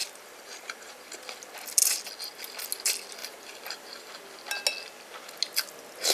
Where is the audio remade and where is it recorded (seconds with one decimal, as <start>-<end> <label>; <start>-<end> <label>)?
0.0-1.1 remade; 1.1-3.2 recorded; 3.2-4.1 remade; 4.1-6.1 recorded